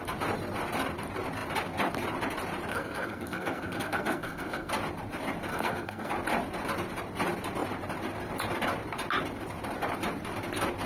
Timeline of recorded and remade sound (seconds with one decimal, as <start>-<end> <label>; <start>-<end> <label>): 0.0-2.7 recorded; 2.7-4.7 remade; 4.7-5.5 recorded; 5.5-6.1 remade; 6.1-10.9 recorded